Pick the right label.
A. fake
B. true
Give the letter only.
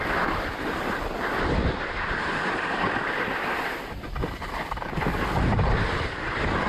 B